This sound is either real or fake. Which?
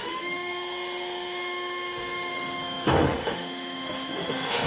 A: fake